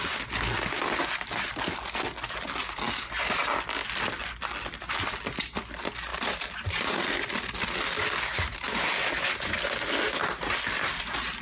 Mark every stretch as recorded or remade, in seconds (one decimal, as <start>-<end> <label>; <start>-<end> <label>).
0.0-11.4 recorded